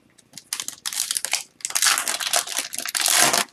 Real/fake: real